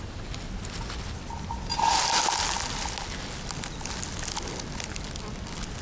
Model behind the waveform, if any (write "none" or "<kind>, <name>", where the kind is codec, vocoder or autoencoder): none